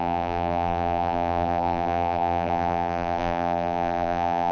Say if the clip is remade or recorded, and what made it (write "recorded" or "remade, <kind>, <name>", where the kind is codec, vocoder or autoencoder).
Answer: remade, vocoder, BigVGAN v2